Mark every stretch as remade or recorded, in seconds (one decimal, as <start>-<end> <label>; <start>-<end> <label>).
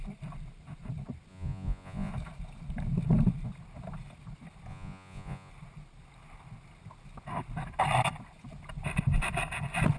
0.0-1.3 recorded; 1.3-2.1 remade; 2.1-4.7 recorded; 4.7-5.5 remade; 5.5-10.0 recorded